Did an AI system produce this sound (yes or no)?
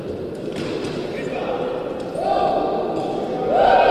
no